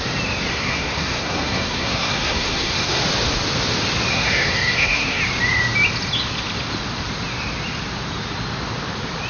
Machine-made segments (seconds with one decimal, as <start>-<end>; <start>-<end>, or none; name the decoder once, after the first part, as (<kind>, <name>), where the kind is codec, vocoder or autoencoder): 0.5-3.0 (codec, SNAC); 4.1-5.2